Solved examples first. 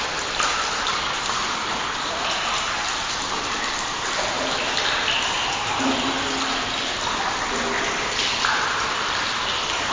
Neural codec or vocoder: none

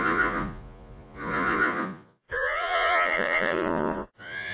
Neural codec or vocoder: vocoder, Vocos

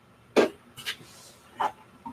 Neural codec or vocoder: none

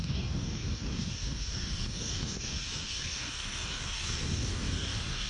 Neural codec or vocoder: codec, DAC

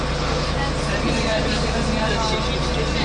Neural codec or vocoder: none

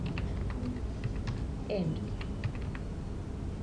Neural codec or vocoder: none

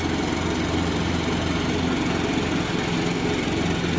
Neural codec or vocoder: none